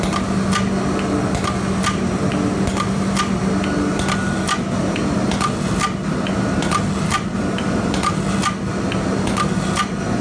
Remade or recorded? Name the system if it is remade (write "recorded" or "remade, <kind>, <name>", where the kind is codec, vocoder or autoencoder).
recorded